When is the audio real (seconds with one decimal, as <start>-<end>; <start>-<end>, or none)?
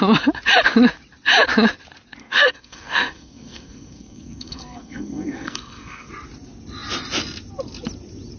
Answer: 0.0-2.2; 6.1-8.4